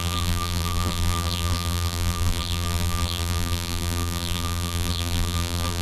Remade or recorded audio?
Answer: remade